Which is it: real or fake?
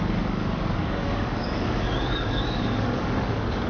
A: fake